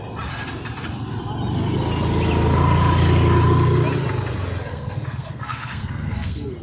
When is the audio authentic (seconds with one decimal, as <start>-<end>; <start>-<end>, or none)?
0.0-4.7